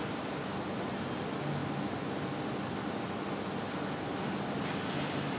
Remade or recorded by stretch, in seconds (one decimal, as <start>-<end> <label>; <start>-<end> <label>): 0.0-5.4 recorded